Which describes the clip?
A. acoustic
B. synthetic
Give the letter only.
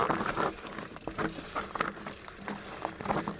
A